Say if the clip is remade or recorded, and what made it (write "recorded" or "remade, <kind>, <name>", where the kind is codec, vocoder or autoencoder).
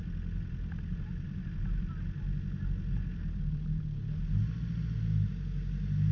recorded